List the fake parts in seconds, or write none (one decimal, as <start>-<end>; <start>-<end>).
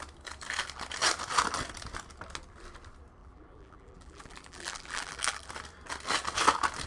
3.2-5.5